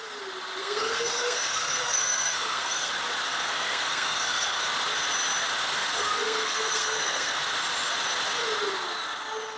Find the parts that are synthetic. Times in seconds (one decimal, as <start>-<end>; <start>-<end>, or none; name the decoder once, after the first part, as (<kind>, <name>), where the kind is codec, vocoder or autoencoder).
0.6-2.9 (codec, SNAC); 3.3-4.6; 6.0-7.4

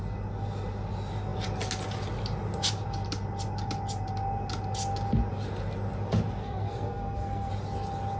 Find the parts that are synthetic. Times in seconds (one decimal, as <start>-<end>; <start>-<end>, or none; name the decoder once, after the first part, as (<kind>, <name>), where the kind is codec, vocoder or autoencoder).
6.4-7.5 (codec, SNAC)

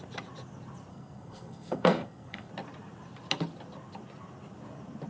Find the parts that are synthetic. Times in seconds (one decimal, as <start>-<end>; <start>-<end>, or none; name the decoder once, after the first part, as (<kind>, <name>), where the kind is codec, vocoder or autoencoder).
0.9-2.5 (codec, SNAC)

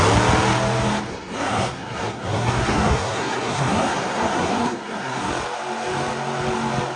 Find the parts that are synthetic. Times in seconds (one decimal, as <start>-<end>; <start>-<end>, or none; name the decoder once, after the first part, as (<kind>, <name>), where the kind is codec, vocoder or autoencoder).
1.1-5.3 (codec, SNAC)

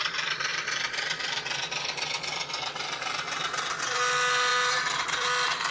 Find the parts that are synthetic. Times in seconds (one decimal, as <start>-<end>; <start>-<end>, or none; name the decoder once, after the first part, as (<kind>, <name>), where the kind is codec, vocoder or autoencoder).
none

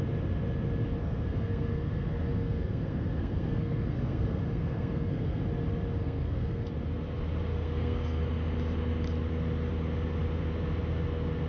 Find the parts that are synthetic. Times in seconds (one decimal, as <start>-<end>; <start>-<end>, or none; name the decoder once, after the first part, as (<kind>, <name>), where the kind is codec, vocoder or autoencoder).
1.0-5.4 (codec, SNAC); 6.0-6.7; 7.5-8.2